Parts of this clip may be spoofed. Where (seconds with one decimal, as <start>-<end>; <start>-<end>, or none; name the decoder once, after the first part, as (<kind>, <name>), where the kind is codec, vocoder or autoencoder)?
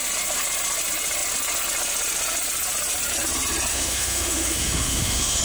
3.7-5.4 (autoencoder, DAC-VAE)